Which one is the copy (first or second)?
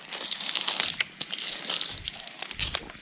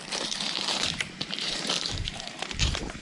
second